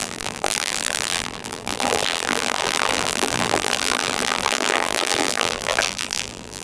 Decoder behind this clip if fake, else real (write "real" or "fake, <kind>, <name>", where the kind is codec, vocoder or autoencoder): fake, vocoder, BigVGAN v2